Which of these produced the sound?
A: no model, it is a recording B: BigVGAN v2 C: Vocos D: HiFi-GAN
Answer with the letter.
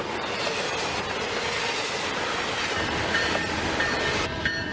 A